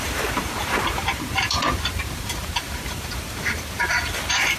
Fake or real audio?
fake